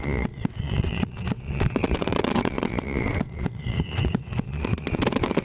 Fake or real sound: fake